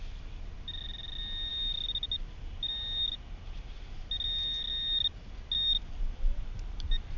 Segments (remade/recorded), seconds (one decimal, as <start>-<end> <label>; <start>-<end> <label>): 0.0-7.2 recorded